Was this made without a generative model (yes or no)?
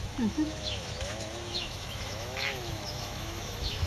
no